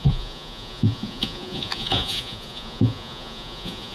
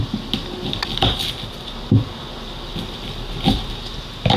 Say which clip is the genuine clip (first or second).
second